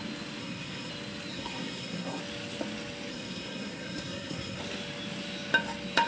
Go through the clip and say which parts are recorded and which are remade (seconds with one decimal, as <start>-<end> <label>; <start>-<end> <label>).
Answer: 0.0-0.4 recorded; 0.4-0.9 remade; 0.9-1.3 recorded; 1.3-2.2 remade; 2.2-3.1 recorded; 3.1-4.6 remade; 4.6-6.1 recorded